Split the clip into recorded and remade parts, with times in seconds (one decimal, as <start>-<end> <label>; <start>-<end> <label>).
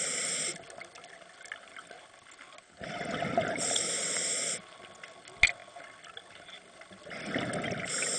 0.0-8.2 recorded